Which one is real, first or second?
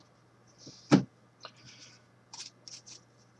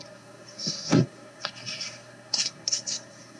first